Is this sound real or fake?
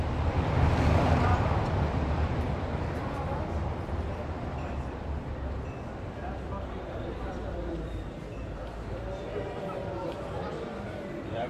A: fake